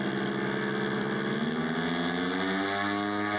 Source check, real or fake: real